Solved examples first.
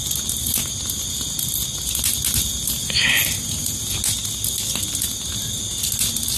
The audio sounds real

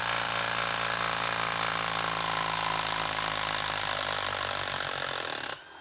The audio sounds real